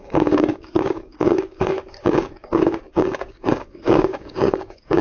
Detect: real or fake fake